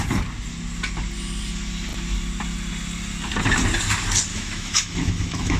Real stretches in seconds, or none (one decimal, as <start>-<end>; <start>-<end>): 0.0-4.3

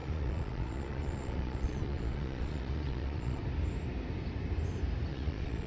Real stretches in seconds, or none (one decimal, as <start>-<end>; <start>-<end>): 3.4-5.1

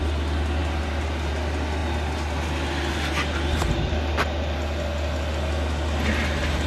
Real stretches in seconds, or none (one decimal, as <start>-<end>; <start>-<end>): 0.0-6.7

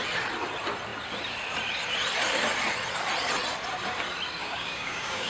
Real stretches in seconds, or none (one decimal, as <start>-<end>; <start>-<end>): 0.0-4.4

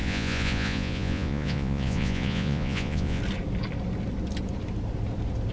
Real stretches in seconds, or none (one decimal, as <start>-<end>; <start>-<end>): 3.2-5.5

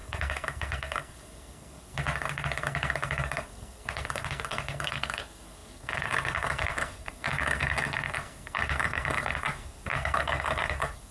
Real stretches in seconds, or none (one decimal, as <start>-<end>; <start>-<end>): none

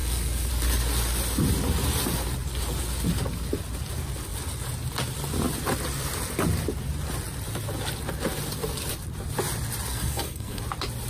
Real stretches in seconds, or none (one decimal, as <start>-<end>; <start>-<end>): 0.5-9.9; 10.6-11.1